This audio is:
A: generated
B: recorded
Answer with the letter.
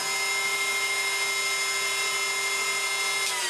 B